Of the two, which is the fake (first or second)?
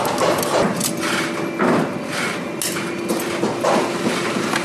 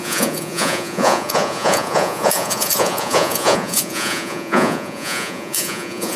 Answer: second